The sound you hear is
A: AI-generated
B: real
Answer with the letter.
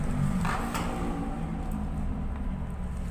B